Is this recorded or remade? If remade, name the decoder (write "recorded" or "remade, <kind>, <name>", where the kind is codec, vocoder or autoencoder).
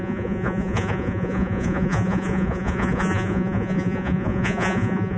remade, vocoder, Vocos